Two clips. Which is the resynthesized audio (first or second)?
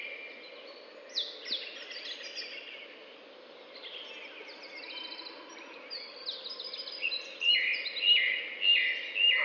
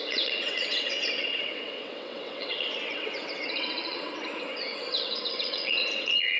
second